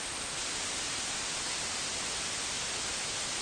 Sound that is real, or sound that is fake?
real